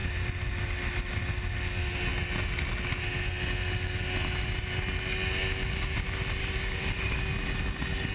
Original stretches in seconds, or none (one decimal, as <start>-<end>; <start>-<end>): 0.0-6.4; 7.2-8.1